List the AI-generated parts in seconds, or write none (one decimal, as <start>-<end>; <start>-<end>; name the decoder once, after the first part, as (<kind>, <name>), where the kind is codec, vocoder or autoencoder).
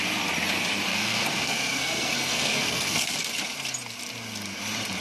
0.9-3.3 (codec, SNAC)